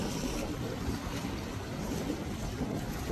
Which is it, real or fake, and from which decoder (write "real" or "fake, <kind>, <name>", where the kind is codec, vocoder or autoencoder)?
real